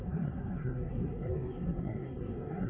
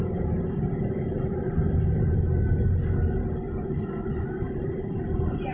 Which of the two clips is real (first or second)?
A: second